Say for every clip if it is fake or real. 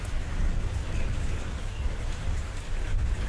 fake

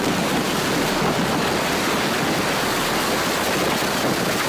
real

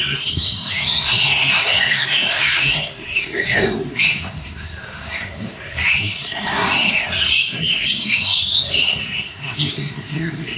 fake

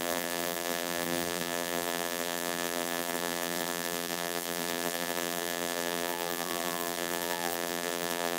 fake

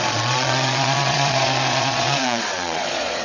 fake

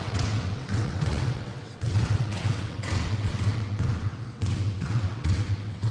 fake